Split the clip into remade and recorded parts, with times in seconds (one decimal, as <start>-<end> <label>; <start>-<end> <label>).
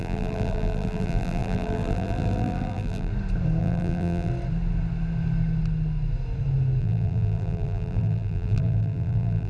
0.0-3.1 remade; 3.1-3.6 recorded; 3.6-4.3 remade; 4.3-6.8 recorded; 6.8-9.5 remade